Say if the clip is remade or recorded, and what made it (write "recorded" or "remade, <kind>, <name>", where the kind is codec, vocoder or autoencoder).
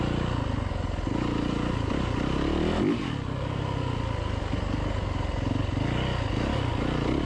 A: recorded